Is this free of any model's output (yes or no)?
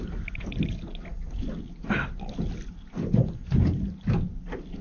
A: yes